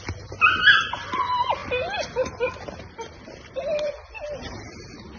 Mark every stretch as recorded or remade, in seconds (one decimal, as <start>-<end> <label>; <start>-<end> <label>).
0.0-5.2 recorded